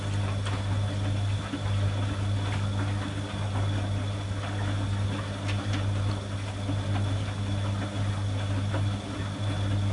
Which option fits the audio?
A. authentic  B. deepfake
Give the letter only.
A